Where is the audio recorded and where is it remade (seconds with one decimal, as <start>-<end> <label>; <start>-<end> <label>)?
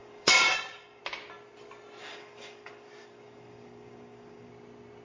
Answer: 0.0-1.0 remade; 1.0-2.0 recorded; 2.0-4.5 remade; 4.5-5.0 recorded